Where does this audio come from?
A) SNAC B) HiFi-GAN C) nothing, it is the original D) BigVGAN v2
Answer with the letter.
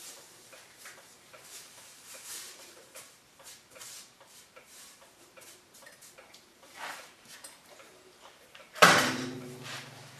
D